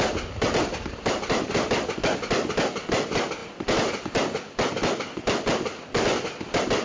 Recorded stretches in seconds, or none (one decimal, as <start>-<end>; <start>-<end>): 0.0-6.8

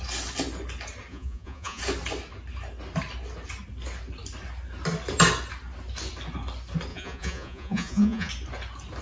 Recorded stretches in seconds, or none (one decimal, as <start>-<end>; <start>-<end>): 0.0-1.1; 1.8-6.9; 8.3-9.0

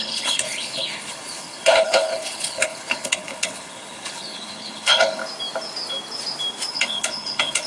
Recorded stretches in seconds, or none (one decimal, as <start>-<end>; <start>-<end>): 5.2-6.7

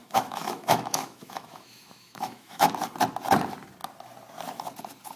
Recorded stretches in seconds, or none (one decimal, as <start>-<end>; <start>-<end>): 2.7-5.2

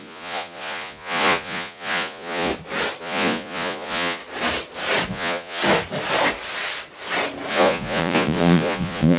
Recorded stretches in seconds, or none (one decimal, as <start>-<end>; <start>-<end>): 2.5-3.0; 4.2-5.1; 5.6-7.5

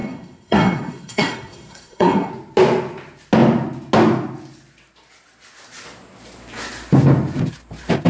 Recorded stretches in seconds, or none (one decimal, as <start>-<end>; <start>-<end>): 2.3-8.1